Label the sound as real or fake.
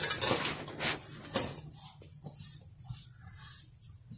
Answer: real